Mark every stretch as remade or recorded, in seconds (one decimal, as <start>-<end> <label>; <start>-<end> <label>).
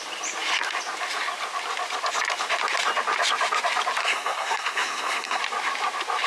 0.0-4.0 recorded; 4.0-5.4 remade; 5.4-6.3 recorded